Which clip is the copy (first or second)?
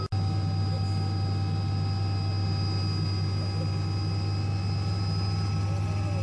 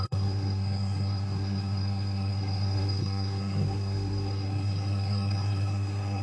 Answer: second